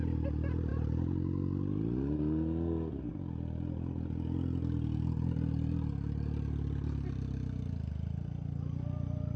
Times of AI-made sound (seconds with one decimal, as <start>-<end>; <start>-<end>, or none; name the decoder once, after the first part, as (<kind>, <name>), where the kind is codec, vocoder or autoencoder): none